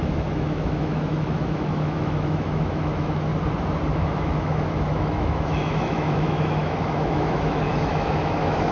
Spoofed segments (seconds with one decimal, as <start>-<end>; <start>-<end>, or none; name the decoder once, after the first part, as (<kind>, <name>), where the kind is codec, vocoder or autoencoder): 0.0-3.3 (autoencoder, DAC-VAE); 3.9-8.7